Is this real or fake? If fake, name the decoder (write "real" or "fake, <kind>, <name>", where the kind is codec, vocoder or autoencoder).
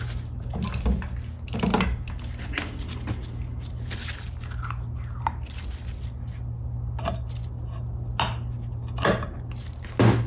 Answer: real